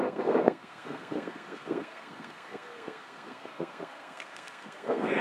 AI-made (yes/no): yes